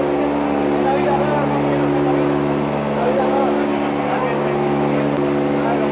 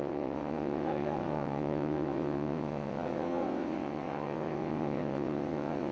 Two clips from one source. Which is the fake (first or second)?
second